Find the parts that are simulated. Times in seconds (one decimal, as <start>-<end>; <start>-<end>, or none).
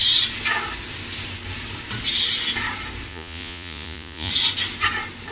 3.1-4.3